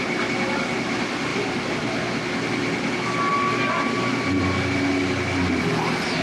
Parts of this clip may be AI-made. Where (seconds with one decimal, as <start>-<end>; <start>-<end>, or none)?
none